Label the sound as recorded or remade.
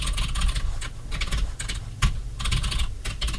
recorded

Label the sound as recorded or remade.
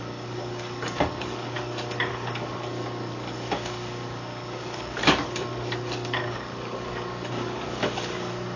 remade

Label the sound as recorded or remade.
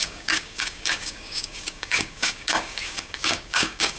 remade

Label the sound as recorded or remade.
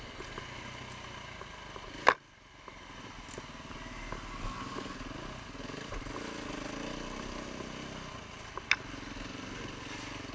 recorded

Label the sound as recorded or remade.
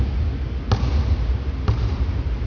recorded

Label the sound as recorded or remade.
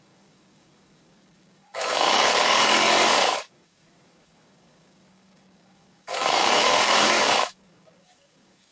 remade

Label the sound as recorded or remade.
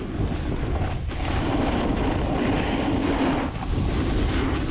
recorded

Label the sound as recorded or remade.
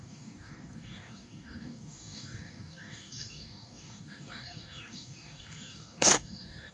remade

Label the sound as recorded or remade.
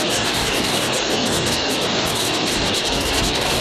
remade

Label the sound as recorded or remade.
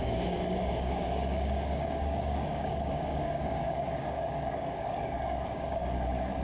remade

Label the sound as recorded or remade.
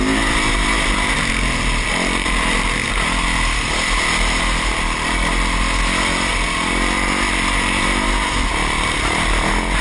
recorded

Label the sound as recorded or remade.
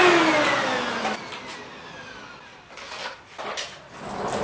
recorded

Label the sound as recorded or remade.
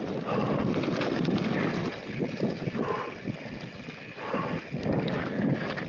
recorded